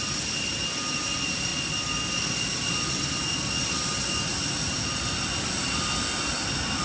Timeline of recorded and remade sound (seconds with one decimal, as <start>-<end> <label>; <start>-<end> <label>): 0.0-6.8 recorded